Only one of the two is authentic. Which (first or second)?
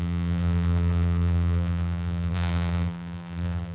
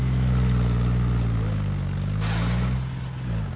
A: second